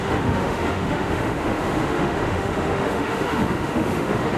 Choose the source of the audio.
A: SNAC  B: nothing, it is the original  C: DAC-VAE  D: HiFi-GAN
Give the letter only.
C